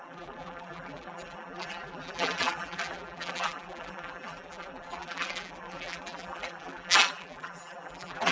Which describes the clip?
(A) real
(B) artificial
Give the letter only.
B